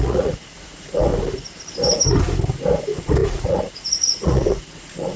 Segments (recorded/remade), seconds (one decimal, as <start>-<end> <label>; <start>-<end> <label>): 0.0-1.1 remade; 1.1-2.8 recorded; 2.8-5.2 remade